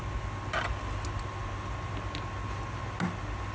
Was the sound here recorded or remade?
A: recorded